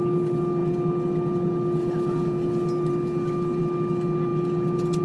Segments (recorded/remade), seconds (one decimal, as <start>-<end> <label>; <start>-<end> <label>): 0.0-5.0 recorded